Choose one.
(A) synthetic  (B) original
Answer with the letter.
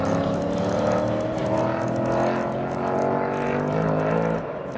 B